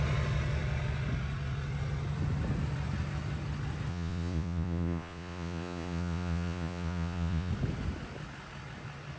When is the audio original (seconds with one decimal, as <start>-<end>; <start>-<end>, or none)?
0.0-3.9; 7.5-9.2